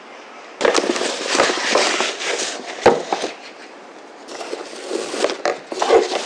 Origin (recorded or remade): recorded